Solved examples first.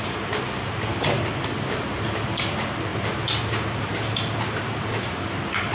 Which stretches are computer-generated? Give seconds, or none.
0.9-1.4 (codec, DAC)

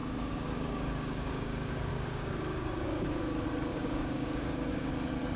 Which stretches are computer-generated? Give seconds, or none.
0.0-3.2 (codec, DAC); 3.7-4.9